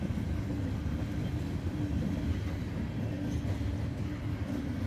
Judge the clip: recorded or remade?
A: recorded